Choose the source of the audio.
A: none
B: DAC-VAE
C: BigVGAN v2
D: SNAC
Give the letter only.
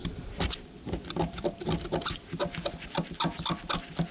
A